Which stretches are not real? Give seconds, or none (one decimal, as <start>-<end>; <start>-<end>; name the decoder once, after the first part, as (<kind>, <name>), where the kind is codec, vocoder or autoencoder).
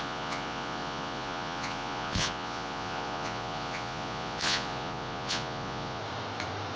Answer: 0.0-6.0 (vocoder, Vocos)